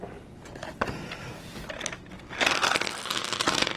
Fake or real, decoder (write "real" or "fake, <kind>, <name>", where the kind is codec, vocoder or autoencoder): real